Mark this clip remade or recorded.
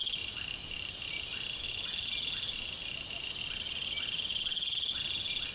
recorded